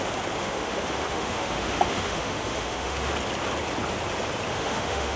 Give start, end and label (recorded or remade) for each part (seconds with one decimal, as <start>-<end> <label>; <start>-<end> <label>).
0.0-0.4 recorded; 0.4-3.1 remade; 3.1-4.5 recorded; 4.5-5.2 remade